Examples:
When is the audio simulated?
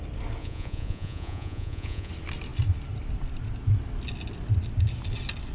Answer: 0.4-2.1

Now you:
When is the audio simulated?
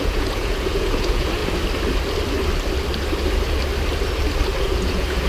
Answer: 0.0-1.4; 4.6-5.3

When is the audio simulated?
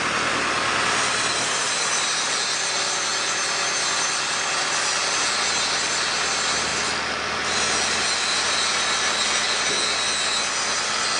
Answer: none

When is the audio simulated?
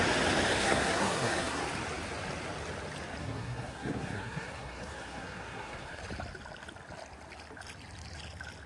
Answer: 0.6-1.6; 3.2-6.0